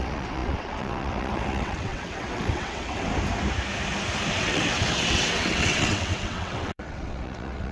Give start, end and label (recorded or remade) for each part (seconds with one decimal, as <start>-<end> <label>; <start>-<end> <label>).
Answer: 0.0-3.1 remade; 3.1-4.3 recorded; 4.3-7.7 remade